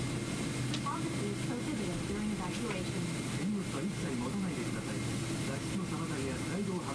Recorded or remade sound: recorded